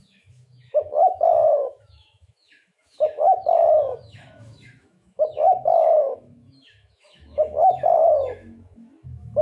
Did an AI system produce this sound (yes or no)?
yes